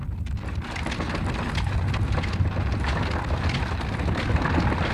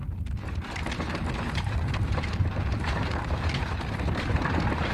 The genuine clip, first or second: first